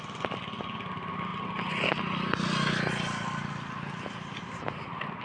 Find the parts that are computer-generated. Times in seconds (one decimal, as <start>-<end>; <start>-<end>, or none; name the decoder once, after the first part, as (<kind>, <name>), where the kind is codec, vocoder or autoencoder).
none